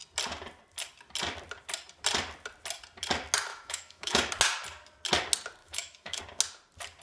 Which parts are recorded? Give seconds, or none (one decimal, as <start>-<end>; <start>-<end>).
0.0-3.5; 4.3-5.6; 6.2-7.0